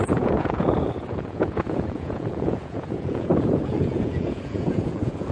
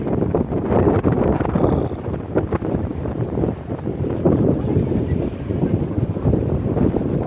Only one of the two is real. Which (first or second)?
second